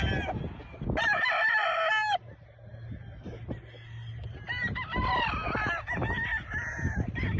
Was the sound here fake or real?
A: real